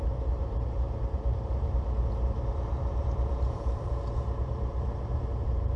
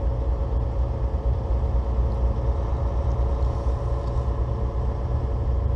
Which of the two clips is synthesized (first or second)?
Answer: first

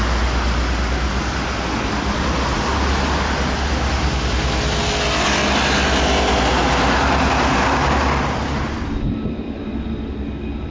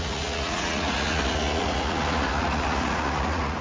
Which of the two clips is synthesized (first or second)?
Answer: second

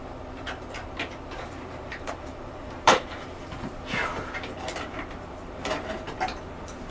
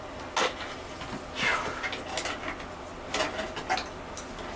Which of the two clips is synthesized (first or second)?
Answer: first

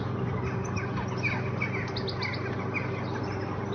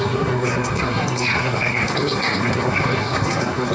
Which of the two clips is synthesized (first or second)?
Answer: second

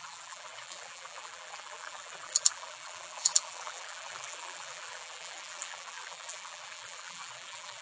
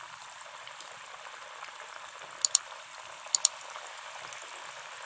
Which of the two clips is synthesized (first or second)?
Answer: first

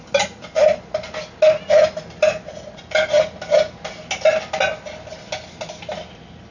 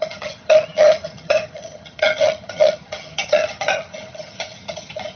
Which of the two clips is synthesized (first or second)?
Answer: second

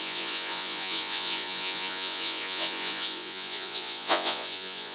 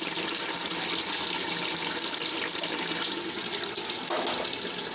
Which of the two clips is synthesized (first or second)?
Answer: first